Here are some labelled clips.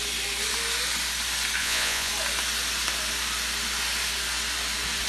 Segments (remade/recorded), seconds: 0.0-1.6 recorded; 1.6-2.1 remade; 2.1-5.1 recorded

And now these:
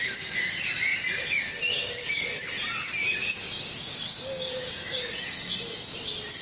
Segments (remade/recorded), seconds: 0.0-3.0 recorded; 3.0-5.1 remade; 5.1-6.4 recorded

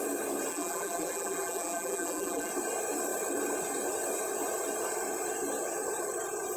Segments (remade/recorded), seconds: 0.0-0.5 recorded; 0.5-2.5 remade; 2.5-6.6 recorded

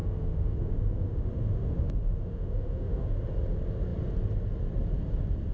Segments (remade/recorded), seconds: 0.0-3.3 remade; 3.3-5.5 recorded